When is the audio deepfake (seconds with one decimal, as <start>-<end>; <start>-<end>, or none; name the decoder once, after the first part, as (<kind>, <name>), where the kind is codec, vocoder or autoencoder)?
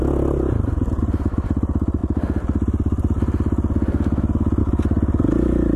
none